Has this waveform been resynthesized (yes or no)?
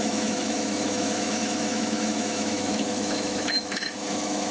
yes